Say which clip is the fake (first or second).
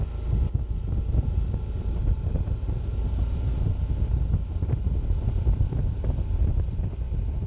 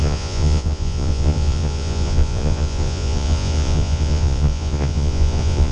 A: second